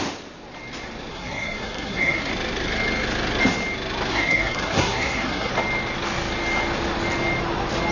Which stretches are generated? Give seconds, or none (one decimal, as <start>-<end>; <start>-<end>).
1.1-2.3; 4.1-5.5

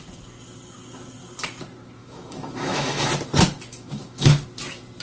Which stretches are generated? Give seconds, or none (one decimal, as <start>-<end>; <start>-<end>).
2.0-3.1; 3.7-4.3

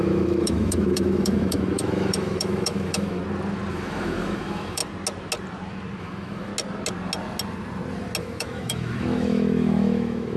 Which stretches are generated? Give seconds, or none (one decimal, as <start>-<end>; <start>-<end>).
0.0-3.2; 3.7-4.8; 6.0-6.5; 8.2-10.4